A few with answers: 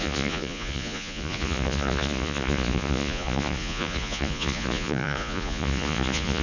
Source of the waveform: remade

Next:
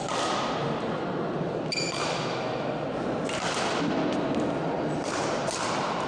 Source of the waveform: recorded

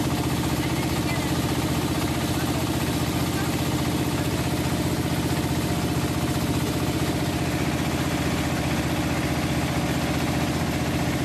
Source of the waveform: recorded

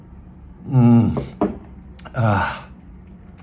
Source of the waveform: recorded